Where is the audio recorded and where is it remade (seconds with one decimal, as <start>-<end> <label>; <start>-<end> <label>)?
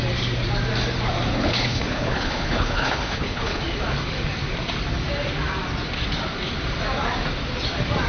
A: 0.0-1.3 recorded; 1.3-3.6 remade; 3.6-8.1 recorded